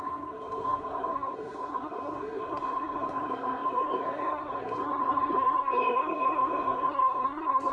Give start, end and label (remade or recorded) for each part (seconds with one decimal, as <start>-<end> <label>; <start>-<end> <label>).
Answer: 0.0-7.7 remade